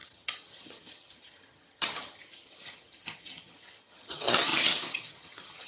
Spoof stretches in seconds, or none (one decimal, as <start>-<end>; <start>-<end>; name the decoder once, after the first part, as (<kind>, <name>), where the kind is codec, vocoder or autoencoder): 0.0-5.7 (vocoder, HiFi-GAN)